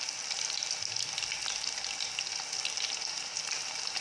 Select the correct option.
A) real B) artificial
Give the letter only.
A